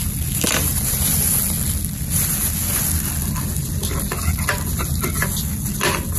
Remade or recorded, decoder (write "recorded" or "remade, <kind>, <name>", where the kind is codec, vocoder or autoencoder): recorded